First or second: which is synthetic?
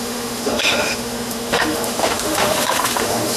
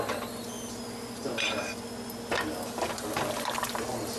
first